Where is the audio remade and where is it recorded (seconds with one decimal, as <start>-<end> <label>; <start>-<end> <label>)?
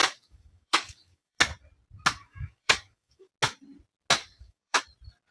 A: 0.0-1.4 remade; 1.4-2.2 recorded; 2.2-3.3 remade; 3.3-4.2 recorded; 4.2-4.8 remade; 4.8-5.3 recorded